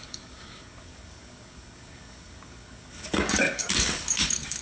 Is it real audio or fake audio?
fake